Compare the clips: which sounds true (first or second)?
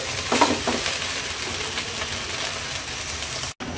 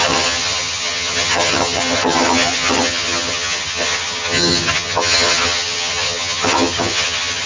first